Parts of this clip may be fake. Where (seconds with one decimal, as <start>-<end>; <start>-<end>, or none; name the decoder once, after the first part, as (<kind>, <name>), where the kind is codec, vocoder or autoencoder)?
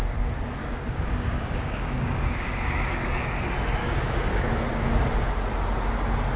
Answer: 0.6-3.1 (codec, DAC); 3.8-4.5